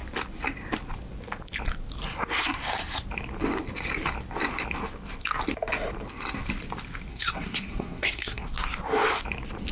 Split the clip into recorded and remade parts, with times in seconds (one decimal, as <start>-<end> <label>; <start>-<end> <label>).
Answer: 0.0-7.1 recorded; 7.1-8.5 remade; 8.5-9.7 recorded